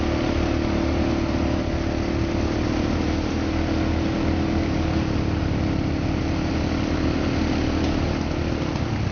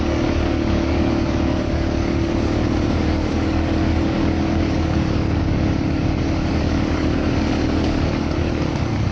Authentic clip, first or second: first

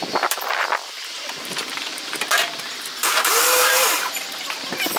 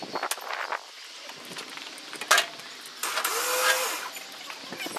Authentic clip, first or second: second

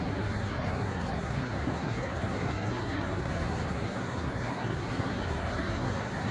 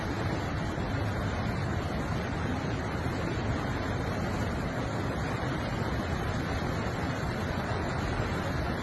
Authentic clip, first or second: second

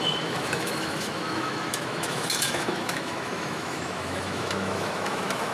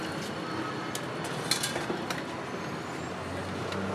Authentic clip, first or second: second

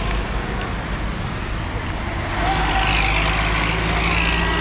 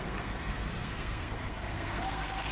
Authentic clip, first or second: first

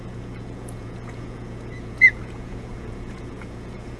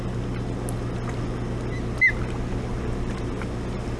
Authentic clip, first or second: second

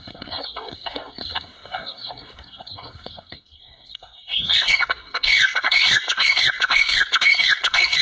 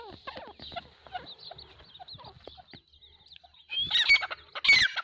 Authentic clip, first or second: second